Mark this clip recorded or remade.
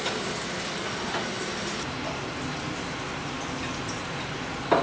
recorded